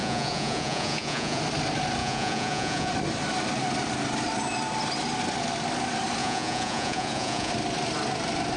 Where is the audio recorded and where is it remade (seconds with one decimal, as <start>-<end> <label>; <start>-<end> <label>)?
0.0-1.4 remade; 1.4-2.0 recorded; 2.0-2.9 remade; 2.9-6.2 recorded; 6.2-7.5 remade; 7.5-8.6 recorded